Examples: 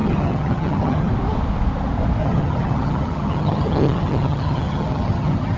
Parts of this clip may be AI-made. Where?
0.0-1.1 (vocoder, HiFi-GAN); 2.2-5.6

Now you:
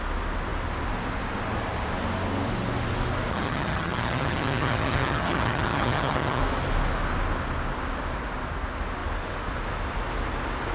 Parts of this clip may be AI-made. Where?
3.3-6.4 (vocoder, HiFi-GAN)

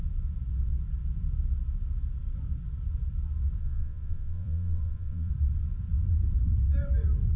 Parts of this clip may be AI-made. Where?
3.6-5.3 (vocoder, Vocos)